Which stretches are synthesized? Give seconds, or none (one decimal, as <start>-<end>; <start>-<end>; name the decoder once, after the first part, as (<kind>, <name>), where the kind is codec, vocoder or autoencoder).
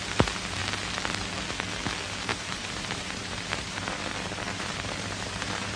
2.3-5.8 (vocoder, BigVGAN v2)